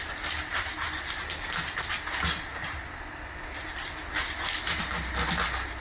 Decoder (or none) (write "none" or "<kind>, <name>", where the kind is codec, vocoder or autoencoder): none